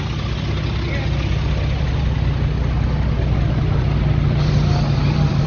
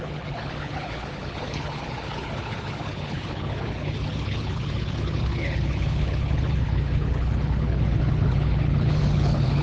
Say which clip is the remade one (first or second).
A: second